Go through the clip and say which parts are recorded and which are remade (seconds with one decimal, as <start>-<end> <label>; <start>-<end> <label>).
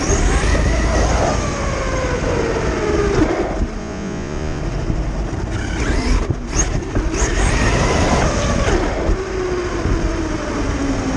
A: 0.0-3.8 recorded; 3.8-4.6 remade; 4.6-11.2 recorded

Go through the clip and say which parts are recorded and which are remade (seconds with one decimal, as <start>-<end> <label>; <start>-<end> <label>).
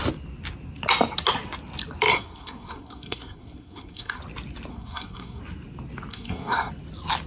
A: 0.0-2.1 recorded; 2.1-4.2 remade; 4.2-4.7 recorded; 4.7-5.4 remade; 5.4-6.1 recorded; 6.1-6.7 remade; 6.7-7.3 recorded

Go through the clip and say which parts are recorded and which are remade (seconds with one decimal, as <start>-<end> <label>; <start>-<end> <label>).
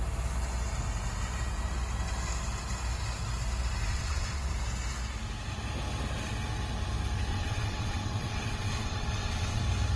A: 0.0-3.9 recorded; 3.9-4.5 remade; 4.5-7.3 recorded; 7.3-9.6 remade; 9.6-10.0 recorded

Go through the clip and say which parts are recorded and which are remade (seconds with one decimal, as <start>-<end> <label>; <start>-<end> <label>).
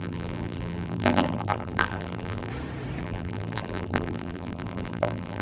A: 0.0-2.5 remade; 2.5-3.0 recorded; 3.0-5.4 remade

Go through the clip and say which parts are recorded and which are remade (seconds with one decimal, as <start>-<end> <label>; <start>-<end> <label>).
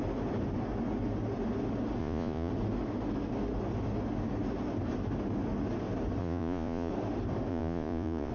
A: 0.0-2.0 recorded; 2.0-2.5 remade; 2.5-6.2 recorded; 6.2-6.9 remade; 6.9-7.5 recorded; 7.5-8.3 remade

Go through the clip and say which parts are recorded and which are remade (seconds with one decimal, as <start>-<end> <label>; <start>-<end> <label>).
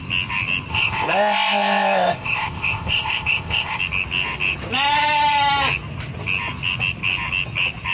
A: 0.0-0.7 recorded; 0.7-3.8 remade; 3.8-7.9 recorded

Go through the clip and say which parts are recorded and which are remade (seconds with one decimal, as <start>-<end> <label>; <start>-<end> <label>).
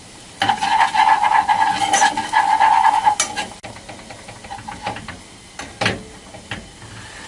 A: 0.0-7.3 recorded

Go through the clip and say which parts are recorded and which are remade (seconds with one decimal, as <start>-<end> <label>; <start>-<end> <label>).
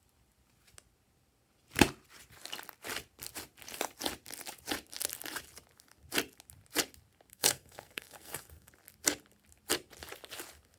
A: 0.0-7.3 recorded; 7.3-8.7 remade; 8.7-10.8 recorded